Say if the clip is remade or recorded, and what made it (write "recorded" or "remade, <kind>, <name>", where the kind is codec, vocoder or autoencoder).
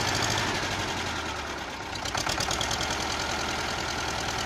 recorded